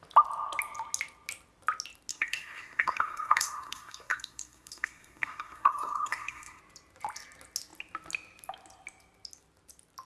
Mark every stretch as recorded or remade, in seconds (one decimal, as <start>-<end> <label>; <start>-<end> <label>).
0.0-2.1 recorded; 2.1-6.6 remade; 6.6-10.0 recorded